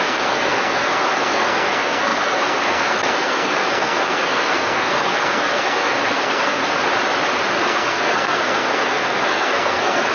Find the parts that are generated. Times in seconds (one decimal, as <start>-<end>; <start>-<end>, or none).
0.0-6.6; 7.6-10.1